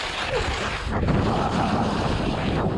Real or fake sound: real